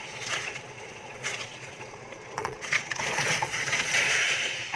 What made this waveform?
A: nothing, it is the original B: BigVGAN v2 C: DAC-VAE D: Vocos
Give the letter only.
D